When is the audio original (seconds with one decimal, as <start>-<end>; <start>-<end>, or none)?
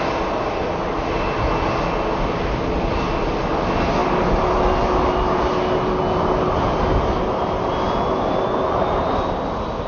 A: 0.0-9.9